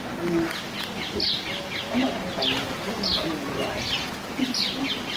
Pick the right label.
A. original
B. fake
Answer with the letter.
A